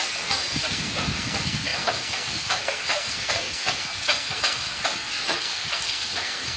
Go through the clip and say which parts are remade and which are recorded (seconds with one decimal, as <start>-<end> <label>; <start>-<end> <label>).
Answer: 0.0-6.6 remade